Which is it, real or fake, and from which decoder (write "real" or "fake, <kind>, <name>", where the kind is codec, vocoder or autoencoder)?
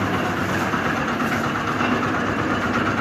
fake, vocoder, BigVGAN v2